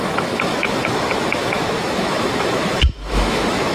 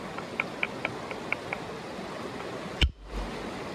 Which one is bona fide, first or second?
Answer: second